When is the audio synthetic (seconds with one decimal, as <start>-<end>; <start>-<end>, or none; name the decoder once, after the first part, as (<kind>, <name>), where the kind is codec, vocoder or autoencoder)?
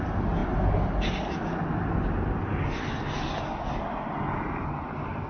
none